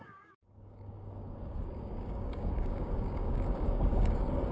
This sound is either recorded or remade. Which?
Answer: remade